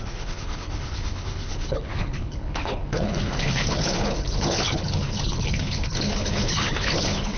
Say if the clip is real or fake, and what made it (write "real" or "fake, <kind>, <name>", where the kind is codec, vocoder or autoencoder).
fake, codec, HILCodec